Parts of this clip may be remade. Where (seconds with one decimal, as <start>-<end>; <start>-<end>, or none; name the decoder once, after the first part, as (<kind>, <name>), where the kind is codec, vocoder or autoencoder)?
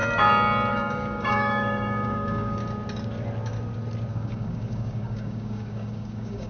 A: 0.7-2.6 (codec, DAC); 4.1-6.5